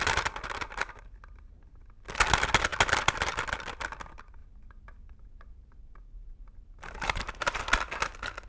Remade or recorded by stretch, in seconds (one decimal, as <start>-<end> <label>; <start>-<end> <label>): 0.0-4.4 recorded; 4.4-7.6 remade; 7.6-8.5 recorded